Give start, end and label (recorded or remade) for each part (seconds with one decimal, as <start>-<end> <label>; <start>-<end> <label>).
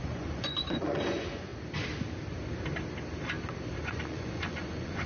0.0-1.5 remade; 1.5-3.8 recorded; 3.8-5.1 remade